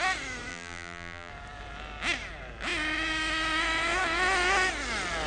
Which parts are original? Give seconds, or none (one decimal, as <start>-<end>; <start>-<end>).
0.0-0.5; 1.3-5.3